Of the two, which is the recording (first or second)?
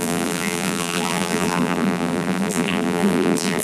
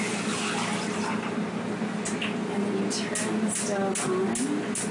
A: second